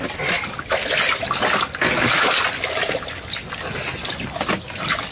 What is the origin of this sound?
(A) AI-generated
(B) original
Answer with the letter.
B